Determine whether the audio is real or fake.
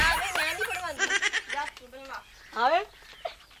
real